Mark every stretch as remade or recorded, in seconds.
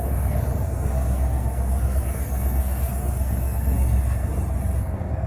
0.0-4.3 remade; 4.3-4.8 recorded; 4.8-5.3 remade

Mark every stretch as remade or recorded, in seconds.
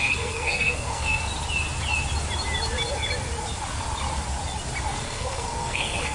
0.0-1.3 remade; 1.3-5.0 recorded; 5.0-6.1 remade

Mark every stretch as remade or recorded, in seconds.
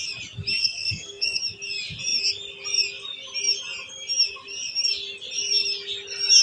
0.0-0.6 recorded; 0.6-1.4 remade; 1.4-6.4 recorded